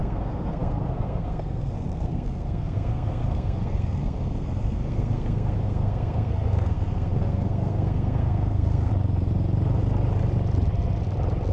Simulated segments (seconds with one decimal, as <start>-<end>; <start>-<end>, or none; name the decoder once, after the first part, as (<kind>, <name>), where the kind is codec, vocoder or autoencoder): 0.0-8.9 (codec, SNAC)